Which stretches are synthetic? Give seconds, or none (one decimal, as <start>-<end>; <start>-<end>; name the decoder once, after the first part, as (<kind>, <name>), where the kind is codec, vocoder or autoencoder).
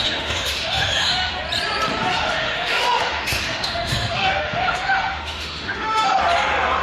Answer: 0.0-1.3 (autoencoder, DAC-VAE); 2.1-6.2